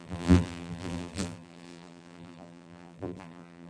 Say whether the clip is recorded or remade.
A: remade